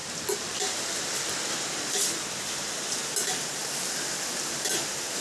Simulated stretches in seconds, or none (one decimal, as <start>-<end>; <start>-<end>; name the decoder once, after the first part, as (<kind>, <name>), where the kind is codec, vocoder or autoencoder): 0.0-3.1 (vocoder, BigVGAN v2); 3.6-4.3